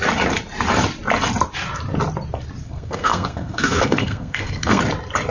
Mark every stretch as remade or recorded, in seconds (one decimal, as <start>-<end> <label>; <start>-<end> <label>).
0.0-2.6 recorded; 2.6-4.8 remade; 4.8-5.3 recorded